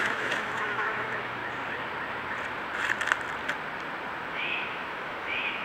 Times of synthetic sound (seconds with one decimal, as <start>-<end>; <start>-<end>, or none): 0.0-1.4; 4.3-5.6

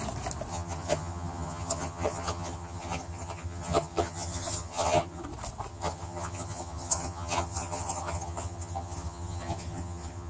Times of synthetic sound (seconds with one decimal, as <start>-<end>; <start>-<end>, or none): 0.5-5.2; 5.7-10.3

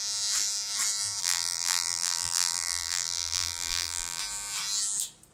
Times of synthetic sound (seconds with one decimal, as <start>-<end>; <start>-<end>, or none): 1.2-4.2

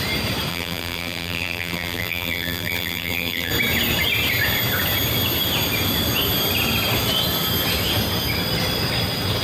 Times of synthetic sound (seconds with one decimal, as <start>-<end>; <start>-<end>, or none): 0.5-3.5

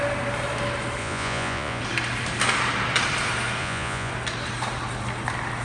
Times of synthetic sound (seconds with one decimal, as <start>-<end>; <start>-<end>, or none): 1.0-1.8; 3.6-4.1